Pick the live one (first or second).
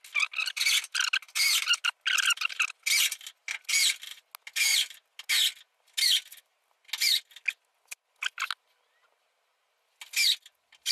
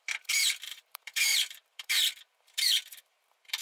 first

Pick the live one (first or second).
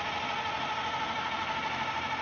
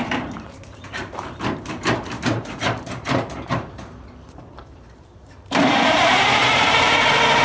first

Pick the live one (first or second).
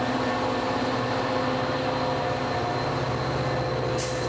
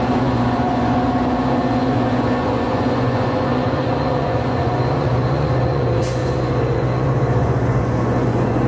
first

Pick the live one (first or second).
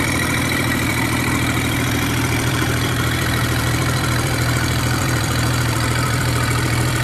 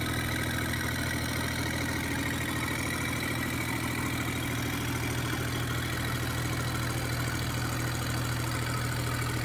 second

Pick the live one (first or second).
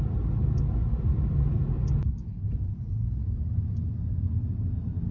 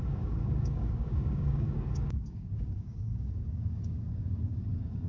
first